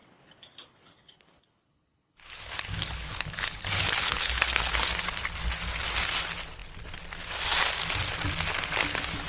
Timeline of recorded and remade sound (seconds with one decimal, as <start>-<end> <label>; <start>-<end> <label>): 0.0-4.9 remade; 4.9-9.3 recorded